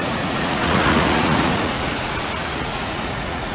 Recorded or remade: remade